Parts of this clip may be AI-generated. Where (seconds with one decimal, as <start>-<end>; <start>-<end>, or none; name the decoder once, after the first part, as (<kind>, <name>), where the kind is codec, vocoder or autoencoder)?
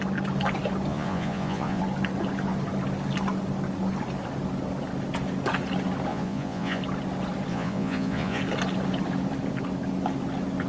0.9-1.8 (vocoder, Vocos); 6.1-6.8; 7.5-8.4